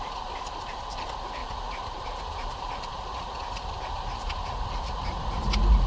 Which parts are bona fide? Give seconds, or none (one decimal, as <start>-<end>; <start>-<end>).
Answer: 0.0-5.9